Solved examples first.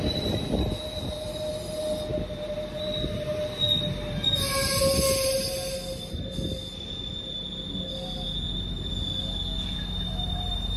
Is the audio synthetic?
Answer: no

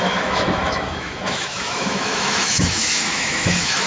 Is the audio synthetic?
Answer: yes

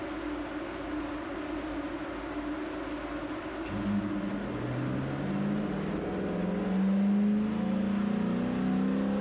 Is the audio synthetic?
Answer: no